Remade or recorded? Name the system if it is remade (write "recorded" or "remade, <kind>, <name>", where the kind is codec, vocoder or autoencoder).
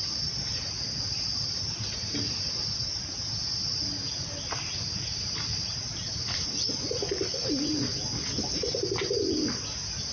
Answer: recorded